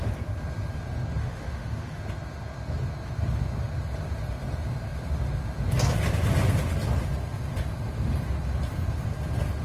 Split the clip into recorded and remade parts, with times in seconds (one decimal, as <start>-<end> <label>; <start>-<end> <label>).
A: 0.0-1.2 recorded; 1.2-2.0 remade; 2.0-9.6 recorded